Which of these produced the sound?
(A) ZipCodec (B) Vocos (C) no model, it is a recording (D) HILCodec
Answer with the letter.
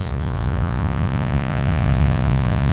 B